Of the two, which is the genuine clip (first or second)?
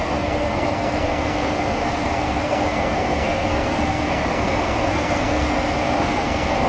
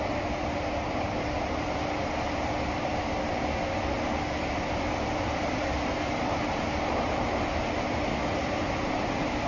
second